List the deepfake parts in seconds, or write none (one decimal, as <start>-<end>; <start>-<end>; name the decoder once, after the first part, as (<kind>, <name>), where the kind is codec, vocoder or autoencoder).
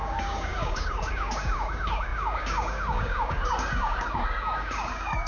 0.0-5.3 (codec, DAC)